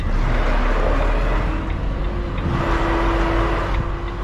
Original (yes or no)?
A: yes